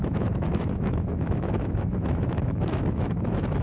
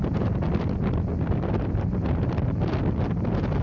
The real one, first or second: second